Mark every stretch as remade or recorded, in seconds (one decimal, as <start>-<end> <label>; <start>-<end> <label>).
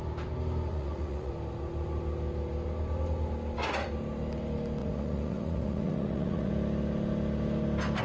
0.0-0.7 recorded; 0.7-1.3 remade; 1.3-4.8 recorded; 4.8-6.5 remade; 6.5-8.0 recorded